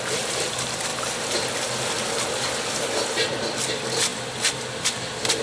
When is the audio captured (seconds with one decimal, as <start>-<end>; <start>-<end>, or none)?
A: 0.0-5.4